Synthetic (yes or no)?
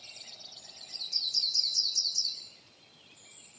yes